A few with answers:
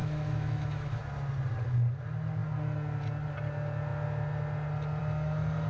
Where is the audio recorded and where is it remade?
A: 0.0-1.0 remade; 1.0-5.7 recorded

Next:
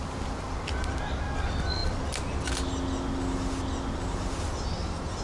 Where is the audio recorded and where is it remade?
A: 0.0-5.2 recorded

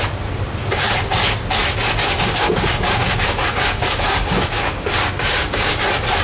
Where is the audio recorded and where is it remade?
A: 0.0-2.0 recorded; 2.0-5.7 remade; 5.7-6.2 recorded

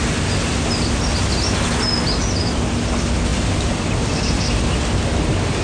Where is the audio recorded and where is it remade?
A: 0.0-5.6 recorded

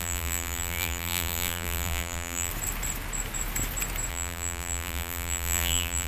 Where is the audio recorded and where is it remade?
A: 0.0-2.5 remade; 2.5-4.1 recorded; 4.1-6.1 remade

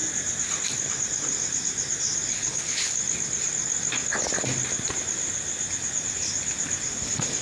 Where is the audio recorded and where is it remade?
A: 0.0-2.3 recorded; 2.3-3.0 remade; 3.0-7.4 recorded